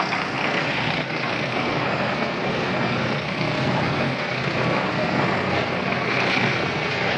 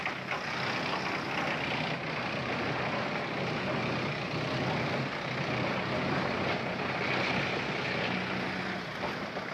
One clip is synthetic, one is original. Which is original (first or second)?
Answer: second